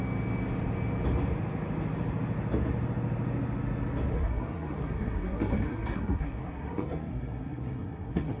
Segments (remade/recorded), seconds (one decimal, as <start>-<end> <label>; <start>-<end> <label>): 0.0-4.1 recorded; 4.1-8.4 remade